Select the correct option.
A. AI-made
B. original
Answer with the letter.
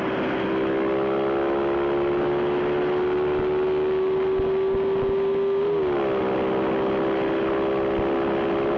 B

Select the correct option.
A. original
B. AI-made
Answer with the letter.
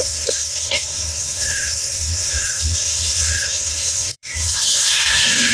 B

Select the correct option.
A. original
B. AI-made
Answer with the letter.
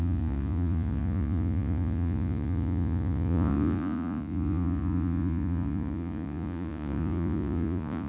B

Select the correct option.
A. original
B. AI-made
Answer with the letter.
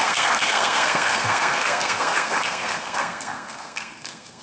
B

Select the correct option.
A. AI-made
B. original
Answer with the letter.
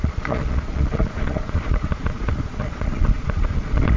A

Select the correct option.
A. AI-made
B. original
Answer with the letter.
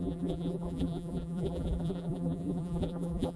A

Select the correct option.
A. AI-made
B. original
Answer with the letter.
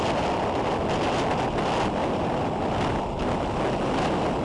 B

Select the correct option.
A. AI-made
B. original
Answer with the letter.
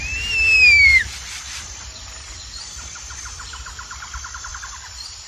A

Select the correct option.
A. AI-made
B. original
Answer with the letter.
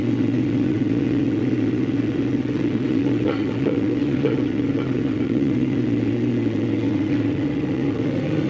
A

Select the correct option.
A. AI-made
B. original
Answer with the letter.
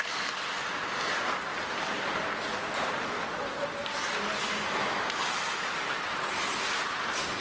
B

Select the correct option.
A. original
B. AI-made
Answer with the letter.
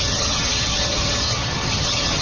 B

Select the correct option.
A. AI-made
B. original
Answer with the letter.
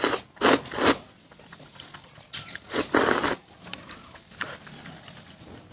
B